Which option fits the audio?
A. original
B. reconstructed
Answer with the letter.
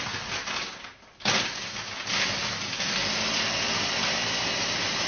A